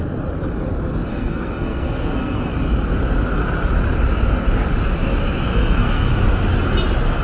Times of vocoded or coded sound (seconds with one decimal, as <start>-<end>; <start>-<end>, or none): 1.1-2.5; 5.5-6.1